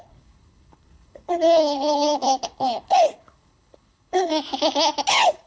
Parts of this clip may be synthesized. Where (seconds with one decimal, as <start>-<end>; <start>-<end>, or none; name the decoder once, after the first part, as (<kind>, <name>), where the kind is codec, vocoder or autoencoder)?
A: 0.0-4.3 (codec, HILCodec); 5.1-5.5